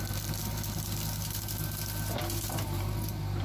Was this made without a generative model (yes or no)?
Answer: yes